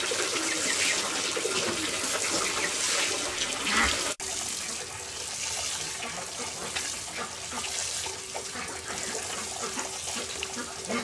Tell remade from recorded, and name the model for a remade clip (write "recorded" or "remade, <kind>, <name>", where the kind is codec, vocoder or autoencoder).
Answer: recorded